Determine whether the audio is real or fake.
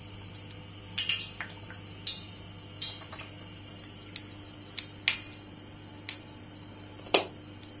real